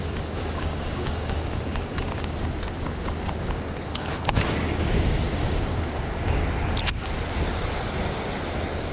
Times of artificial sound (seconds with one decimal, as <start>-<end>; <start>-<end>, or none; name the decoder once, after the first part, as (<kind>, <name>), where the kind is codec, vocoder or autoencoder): 0.0-6.4 (codec, DAC)